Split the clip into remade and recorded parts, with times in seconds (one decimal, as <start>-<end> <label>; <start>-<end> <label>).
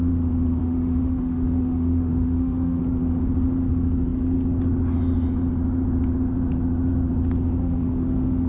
0.0-0.6 recorded; 0.6-2.8 remade; 2.8-7.6 recorded; 7.6-8.5 remade